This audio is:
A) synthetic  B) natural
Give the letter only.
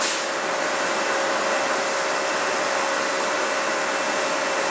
B